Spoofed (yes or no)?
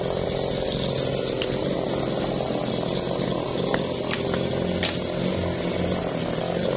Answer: no